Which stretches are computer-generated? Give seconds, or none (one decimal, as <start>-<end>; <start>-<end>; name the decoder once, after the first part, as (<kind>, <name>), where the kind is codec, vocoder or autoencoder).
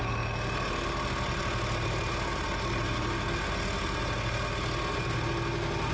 none